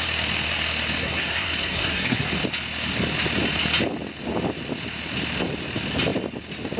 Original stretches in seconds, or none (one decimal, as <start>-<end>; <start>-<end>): 0.0-1.0; 2.3-6.8